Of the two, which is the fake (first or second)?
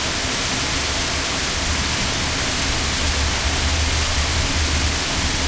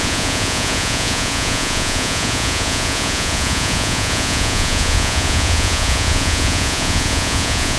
second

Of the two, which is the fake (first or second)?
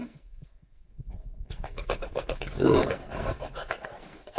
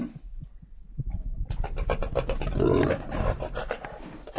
first